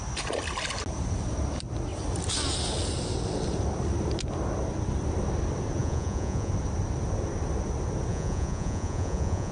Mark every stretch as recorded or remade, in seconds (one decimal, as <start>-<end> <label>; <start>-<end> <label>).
0.0-5.8 recorded; 5.8-6.5 remade; 6.5-8.1 recorded; 8.1-9.5 remade

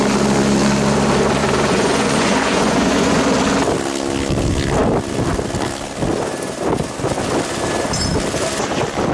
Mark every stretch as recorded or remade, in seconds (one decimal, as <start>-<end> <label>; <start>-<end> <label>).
0.0-1.4 recorded; 1.4-3.2 remade; 3.2-9.1 recorded

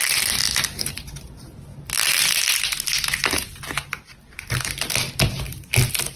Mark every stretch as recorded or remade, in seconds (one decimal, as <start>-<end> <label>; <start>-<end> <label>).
0.0-6.2 recorded

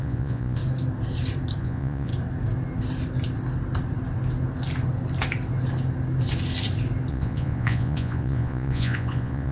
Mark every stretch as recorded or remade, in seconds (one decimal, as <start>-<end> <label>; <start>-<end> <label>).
0.0-0.6 remade; 0.6-1.6 recorded; 1.6-2.1 remade; 2.1-7.1 recorded; 7.1-9.5 remade

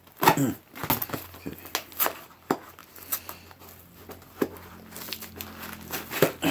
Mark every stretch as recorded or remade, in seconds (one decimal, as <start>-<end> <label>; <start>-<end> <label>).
0.0-6.5 recorded

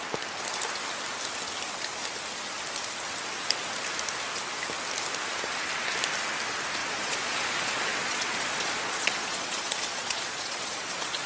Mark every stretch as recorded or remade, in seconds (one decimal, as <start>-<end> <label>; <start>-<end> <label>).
0.0-6.8 recorded; 6.8-11.3 remade

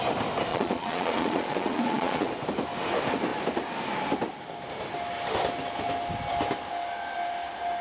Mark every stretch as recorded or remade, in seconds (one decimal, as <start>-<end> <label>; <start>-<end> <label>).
0.0-0.5 recorded; 0.5-2.3 remade; 2.3-7.8 recorded